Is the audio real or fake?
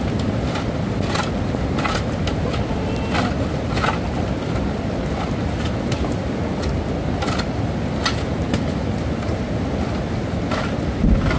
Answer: real